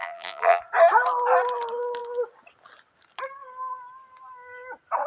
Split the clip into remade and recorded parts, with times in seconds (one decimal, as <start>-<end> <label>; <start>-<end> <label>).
0.0-0.6 remade; 0.6-5.1 recorded